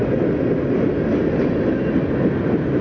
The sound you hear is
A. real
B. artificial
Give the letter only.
A